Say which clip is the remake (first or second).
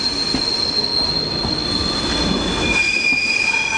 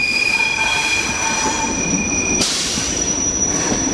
second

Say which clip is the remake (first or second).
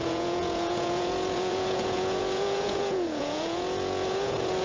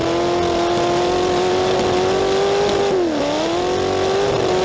first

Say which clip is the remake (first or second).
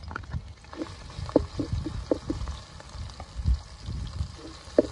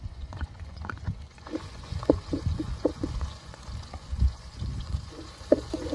second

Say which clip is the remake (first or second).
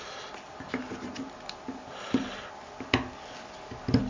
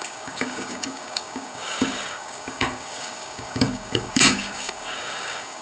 second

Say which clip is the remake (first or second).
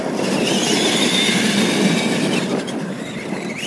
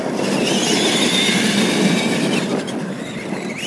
first